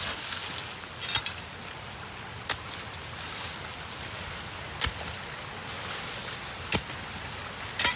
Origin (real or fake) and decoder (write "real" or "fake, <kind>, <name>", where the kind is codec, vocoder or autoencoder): real